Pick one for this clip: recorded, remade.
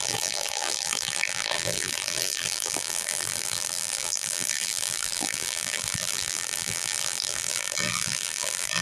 remade